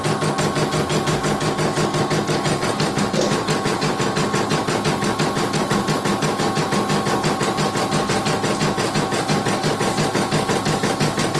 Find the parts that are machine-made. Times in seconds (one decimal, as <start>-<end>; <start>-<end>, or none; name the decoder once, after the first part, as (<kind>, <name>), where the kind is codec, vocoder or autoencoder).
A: none